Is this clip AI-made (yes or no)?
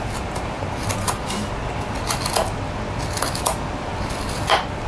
no